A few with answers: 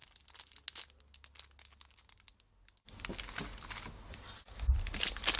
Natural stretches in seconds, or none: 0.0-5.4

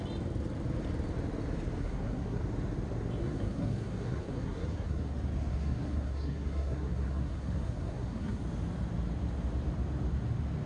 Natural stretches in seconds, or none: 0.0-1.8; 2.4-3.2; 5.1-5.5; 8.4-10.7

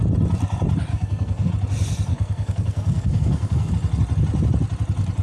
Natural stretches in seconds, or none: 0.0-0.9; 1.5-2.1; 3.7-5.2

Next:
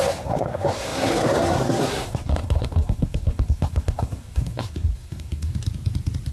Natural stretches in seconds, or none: 5.5-6.3

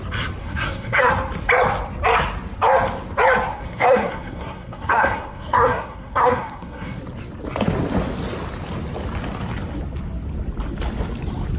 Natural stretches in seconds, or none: 0.0-0.4; 1.1-3.5; 7.0-11.6